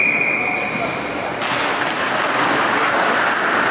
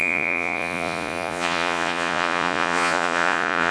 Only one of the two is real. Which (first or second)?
first